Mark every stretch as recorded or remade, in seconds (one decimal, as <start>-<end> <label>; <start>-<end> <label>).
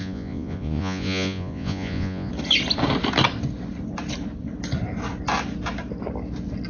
0.0-2.3 remade; 2.3-6.7 recorded